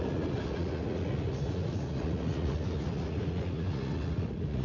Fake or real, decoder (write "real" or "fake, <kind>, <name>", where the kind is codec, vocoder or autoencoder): fake, vocoder, Vocos